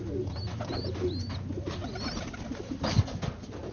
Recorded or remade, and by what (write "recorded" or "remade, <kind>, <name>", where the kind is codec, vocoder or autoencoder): recorded